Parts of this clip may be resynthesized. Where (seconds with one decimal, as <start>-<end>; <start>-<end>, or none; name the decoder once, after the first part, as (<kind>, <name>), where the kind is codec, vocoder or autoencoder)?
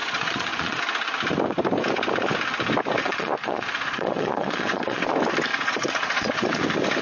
0.0-0.8 (vocoder, Vocos); 3.0-5.0; 5.5-6.6